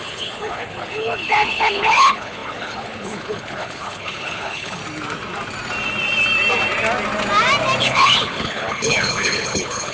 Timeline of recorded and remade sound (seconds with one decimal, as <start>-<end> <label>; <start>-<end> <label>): 0.0-4.8 remade; 4.8-7.8 recorded; 7.8-9.9 remade